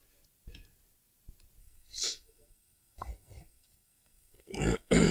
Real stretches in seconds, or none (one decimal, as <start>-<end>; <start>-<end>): 0.0-1.6